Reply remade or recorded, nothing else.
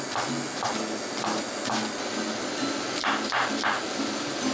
recorded